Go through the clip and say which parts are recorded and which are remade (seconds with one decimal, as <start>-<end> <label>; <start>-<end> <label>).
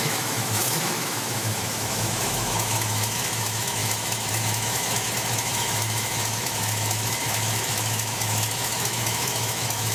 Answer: 0.0-9.9 remade